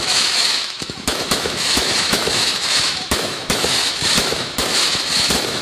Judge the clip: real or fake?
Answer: fake